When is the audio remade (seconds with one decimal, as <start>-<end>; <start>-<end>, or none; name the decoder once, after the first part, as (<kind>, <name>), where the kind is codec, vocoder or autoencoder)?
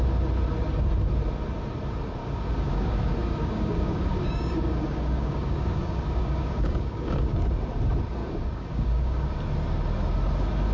2.2-7.4 (codec, DAC); 8.2-9.4